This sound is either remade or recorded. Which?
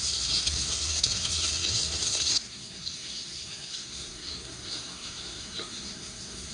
remade